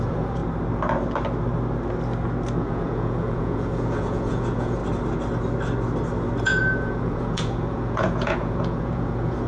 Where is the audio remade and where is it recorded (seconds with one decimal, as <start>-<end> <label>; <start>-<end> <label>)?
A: 0.0-0.4 remade; 0.4-2.6 recorded; 2.6-4.8 remade; 4.8-6.4 recorded; 6.4-9.5 remade